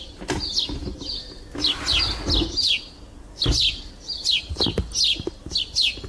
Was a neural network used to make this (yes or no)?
no